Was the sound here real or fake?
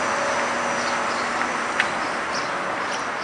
real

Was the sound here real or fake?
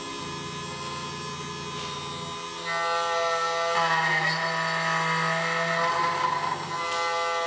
real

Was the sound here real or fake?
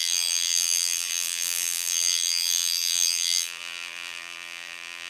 fake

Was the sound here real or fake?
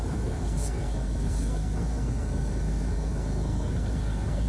fake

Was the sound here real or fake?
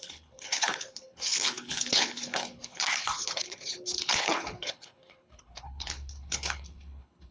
fake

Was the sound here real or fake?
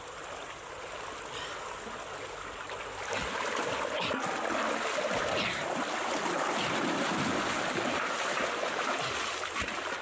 real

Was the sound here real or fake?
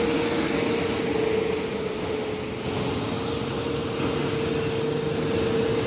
real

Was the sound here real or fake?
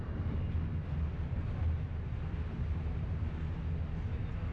real